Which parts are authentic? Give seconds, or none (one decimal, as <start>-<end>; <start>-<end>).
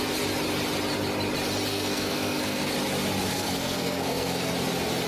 0.0-1.7; 2.7-3.3; 4.5-5.1